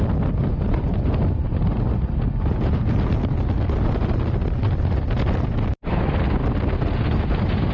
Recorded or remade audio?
recorded